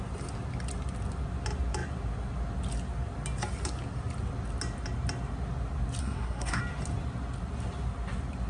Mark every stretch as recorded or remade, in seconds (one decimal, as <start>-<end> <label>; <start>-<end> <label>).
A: 0.0-6.0 recorded; 6.0-6.6 remade; 6.6-8.5 recorded

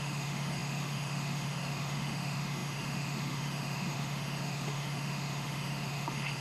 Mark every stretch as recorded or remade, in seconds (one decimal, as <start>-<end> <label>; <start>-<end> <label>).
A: 0.0-6.4 remade

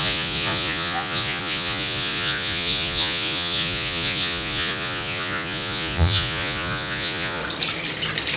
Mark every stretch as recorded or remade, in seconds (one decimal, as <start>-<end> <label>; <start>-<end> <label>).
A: 0.0-7.4 remade; 7.4-8.4 recorded

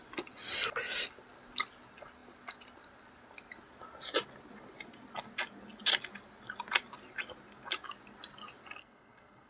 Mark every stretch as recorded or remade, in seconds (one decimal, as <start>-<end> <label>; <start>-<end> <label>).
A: 0.0-8.8 recorded; 8.8-9.5 remade

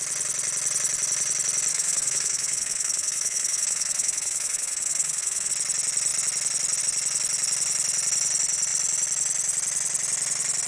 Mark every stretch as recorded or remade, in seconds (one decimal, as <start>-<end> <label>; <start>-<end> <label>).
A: 0.0-1.7 recorded; 1.7-5.5 remade; 5.5-10.7 recorded

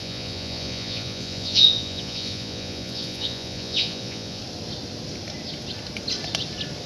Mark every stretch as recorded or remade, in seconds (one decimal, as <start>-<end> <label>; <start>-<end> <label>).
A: 0.0-4.4 remade; 4.4-6.9 recorded

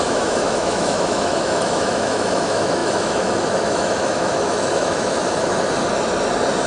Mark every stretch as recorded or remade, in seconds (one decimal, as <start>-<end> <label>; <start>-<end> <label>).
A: 0.0-5.2 remade; 5.2-6.7 recorded